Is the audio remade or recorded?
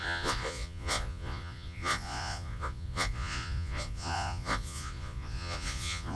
remade